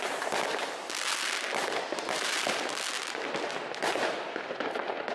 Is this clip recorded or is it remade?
recorded